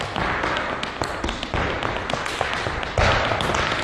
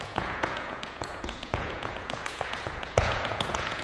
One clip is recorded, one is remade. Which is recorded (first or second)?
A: first